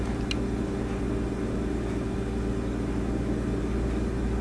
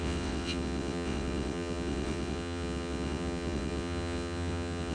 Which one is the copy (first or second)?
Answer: second